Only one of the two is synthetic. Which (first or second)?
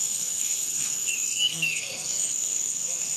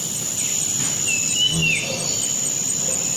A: first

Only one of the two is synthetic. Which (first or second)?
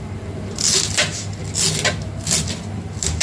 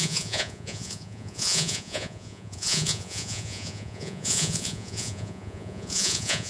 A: second